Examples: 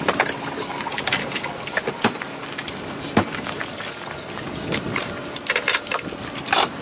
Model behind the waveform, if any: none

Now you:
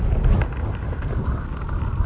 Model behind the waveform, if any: none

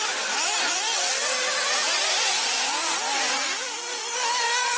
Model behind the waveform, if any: none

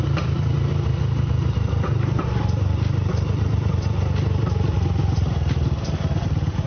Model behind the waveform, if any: vocoder, BigVGAN v2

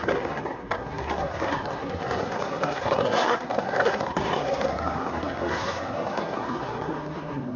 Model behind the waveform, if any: codec, SNAC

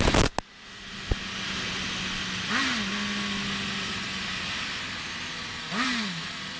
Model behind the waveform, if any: none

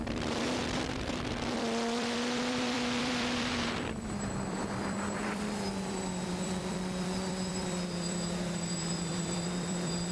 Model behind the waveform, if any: vocoder, BigVGAN v2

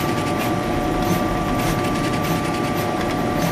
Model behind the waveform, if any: none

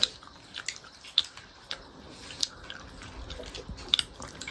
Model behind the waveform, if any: none